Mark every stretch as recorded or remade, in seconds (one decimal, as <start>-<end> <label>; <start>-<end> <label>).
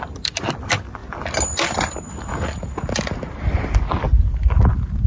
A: 0.0-5.1 recorded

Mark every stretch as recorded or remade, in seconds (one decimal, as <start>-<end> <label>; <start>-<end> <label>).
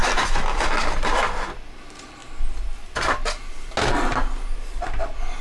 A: 0.0-5.4 recorded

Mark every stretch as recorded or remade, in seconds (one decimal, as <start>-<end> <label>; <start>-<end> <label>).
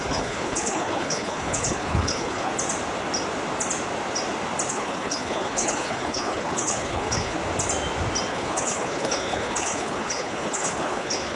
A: 0.0-2.5 remade; 2.5-4.7 recorded; 4.7-7.4 remade; 7.4-8.3 recorded; 8.3-11.4 remade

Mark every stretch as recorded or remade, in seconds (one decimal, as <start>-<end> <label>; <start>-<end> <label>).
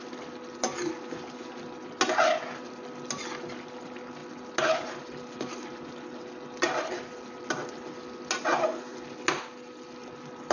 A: 0.0-10.5 recorded